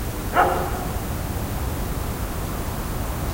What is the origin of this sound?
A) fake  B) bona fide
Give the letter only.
B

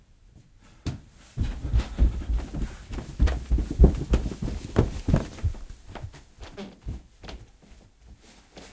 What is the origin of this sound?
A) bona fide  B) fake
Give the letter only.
B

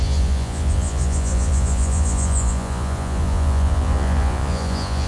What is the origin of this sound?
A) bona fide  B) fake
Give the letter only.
B